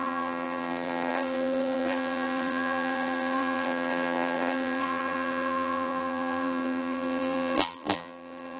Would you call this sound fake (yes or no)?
yes